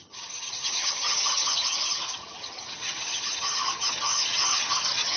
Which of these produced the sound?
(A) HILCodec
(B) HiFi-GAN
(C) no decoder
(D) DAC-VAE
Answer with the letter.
B